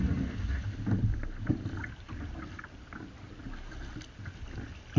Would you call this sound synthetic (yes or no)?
no